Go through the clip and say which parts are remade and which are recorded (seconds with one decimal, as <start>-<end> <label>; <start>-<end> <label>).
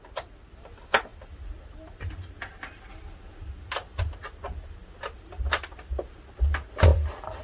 0.0-7.4 recorded